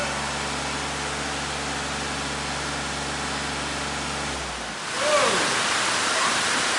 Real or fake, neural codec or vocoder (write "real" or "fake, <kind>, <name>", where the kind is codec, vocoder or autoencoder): real